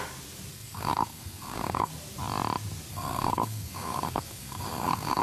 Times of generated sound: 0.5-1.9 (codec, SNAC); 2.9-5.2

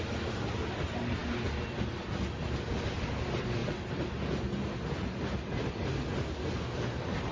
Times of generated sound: none

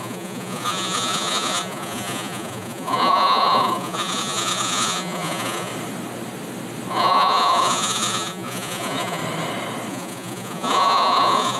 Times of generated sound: 0.0-5.7 (vocoder, Vocos); 6.9-9.2; 9.9-11.6

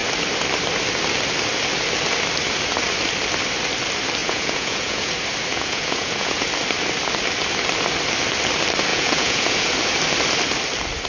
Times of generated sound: 4.2-5.1 (vocoder, Vocos); 5.5-6.5; 8.9-9.7